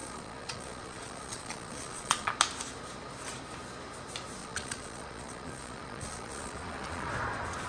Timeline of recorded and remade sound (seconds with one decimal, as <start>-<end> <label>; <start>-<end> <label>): 0.0-2.3 remade; 2.3-4.4 recorded; 4.4-7.1 remade; 7.1-7.7 recorded